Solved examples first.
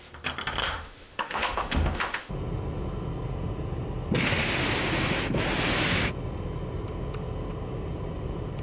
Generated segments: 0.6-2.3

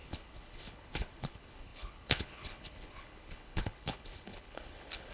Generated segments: 0.0-5.1

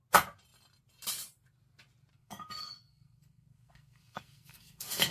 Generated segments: 2.1-5.1

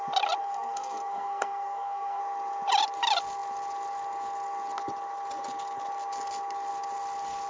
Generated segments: 0.4-2.2

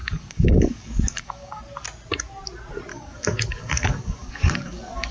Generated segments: 0.0-1.6; 2.9-5.1